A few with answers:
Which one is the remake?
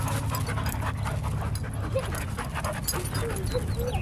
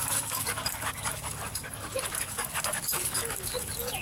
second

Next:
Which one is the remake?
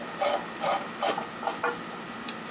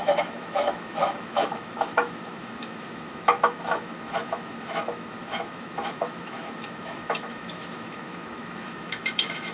second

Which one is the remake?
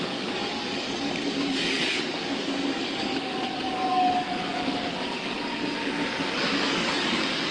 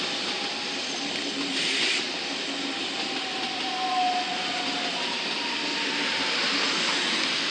first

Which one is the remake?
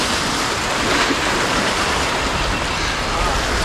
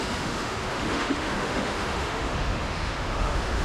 second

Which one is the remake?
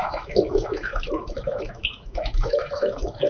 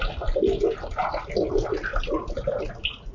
first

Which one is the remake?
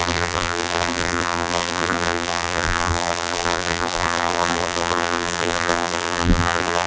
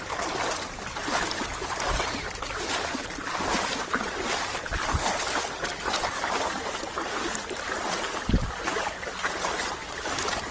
first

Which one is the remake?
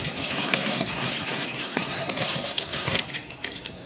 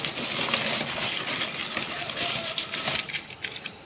first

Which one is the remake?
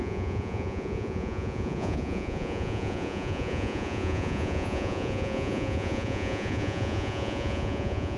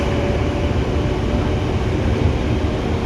first